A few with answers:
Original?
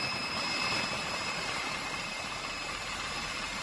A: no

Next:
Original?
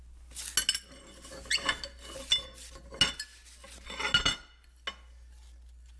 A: yes